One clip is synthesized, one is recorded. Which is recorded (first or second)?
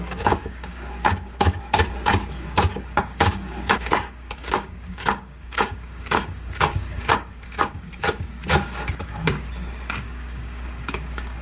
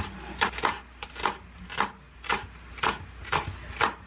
second